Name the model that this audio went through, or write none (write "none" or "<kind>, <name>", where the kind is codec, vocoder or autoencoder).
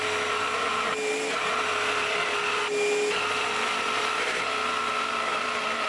none